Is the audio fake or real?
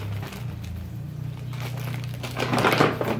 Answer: real